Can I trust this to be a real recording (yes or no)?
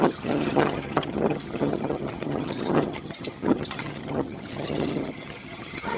no